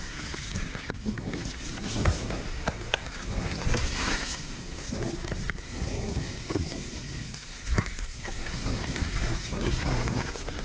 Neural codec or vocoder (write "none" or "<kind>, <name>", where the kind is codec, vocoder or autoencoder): codec, SNAC